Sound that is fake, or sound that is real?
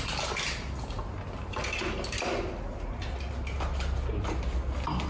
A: real